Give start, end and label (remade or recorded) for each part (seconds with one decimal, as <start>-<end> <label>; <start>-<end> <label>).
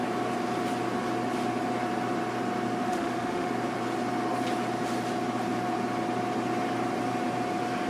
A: 0.0-2.9 recorded; 2.9-3.5 remade; 3.5-7.9 recorded